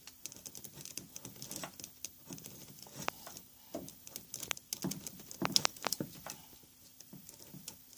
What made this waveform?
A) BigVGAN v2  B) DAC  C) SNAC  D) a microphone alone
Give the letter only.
D